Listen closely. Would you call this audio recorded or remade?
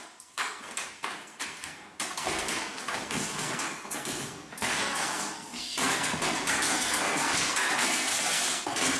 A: remade